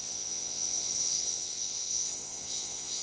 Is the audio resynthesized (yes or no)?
yes